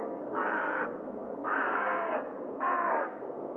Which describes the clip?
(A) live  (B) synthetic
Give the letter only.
B